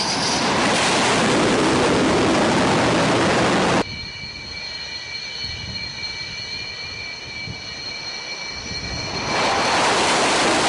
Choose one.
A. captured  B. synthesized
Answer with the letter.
A